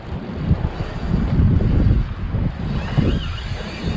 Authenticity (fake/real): real